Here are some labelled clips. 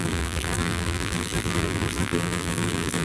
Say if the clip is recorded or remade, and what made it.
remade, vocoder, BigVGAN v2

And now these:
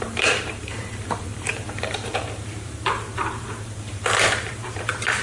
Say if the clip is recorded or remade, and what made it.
remade, vocoder, BigVGAN v2